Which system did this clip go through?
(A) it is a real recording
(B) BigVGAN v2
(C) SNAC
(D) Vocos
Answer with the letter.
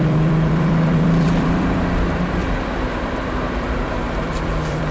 B